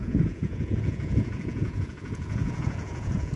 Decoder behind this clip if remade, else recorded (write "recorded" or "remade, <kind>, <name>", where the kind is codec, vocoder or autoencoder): remade, vocoder, Vocos